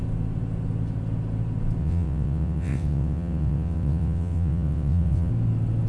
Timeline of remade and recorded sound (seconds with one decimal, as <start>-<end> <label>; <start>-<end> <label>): 0.0-1.8 recorded; 1.8-5.3 remade; 5.3-5.9 recorded